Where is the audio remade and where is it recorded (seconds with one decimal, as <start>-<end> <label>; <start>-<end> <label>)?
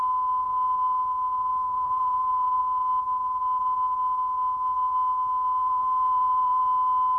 0.0-1.5 recorded; 1.5-2.6 remade; 2.6-5.6 recorded; 5.6-6.6 remade; 6.6-7.2 recorded